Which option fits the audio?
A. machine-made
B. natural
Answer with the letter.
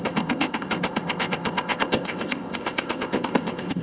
A